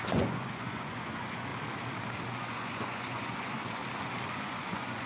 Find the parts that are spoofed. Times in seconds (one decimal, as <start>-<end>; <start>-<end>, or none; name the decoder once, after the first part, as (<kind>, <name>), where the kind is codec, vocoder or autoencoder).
0.0-1.5 (vocoder, Vocos); 2.4-3.8; 4.3-5.1